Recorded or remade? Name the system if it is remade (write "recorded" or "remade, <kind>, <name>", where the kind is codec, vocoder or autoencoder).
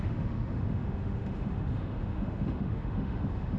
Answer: remade, autoencoder, DAC-VAE